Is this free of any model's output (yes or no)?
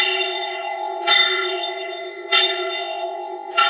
no